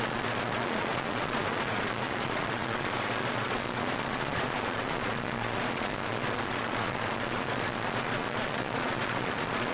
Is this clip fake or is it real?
fake